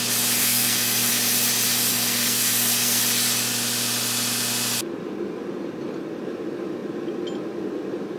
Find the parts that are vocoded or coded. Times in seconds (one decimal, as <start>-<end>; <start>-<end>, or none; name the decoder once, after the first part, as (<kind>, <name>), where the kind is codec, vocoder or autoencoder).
0.4-1.1 (codec, SNAC); 1.9-3.0